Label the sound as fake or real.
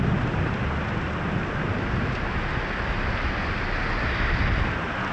real